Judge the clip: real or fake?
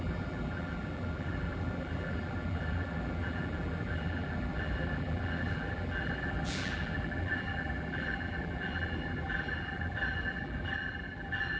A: fake